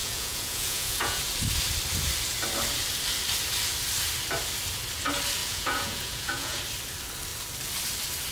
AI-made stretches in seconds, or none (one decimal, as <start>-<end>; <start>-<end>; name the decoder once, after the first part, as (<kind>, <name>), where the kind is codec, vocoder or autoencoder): 0.0-1.2 (vocoder, Vocos); 5.4-6.6